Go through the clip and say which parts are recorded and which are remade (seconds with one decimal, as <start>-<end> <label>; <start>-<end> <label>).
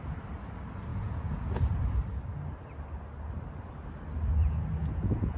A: 0.0-0.9 recorded; 0.9-1.6 remade; 1.6-4.8 recorded; 4.8-5.4 remade